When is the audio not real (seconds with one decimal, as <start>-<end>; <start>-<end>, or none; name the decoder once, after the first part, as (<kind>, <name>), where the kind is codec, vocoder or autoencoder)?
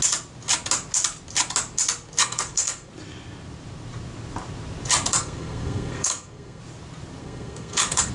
2.2-2.9 (codec, SNAC); 5.2-6.6; 7.2-8.1